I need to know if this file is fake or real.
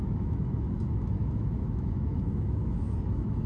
fake